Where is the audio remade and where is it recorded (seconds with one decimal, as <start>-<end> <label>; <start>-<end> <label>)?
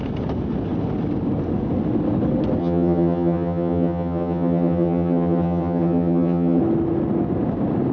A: 0.0-2.6 recorded; 2.6-6.6 remade; 6.6-7.9 recorded